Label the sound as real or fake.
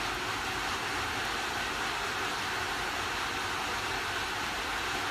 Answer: real